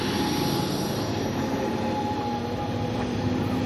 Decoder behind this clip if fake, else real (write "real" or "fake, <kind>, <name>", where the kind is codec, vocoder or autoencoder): real